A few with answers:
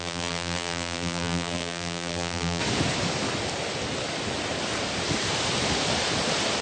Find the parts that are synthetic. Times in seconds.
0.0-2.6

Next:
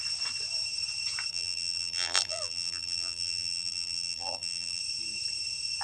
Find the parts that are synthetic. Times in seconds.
1.3-4.8

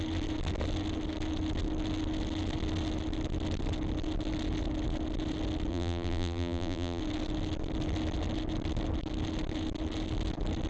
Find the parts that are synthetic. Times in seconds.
5.7-7.0